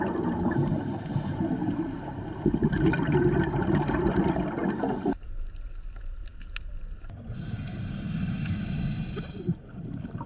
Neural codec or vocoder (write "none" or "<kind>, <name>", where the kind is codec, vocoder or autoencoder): none